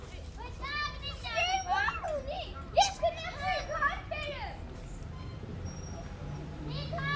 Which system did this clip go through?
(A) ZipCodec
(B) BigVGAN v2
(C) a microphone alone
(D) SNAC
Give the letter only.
C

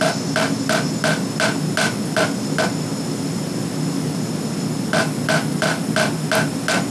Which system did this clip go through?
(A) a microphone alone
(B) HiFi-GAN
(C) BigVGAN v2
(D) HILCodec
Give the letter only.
A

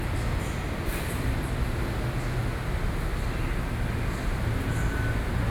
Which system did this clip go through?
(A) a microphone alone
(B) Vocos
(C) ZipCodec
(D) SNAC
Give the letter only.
A